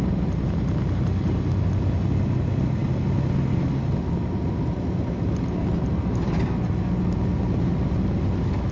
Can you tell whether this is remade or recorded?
recorded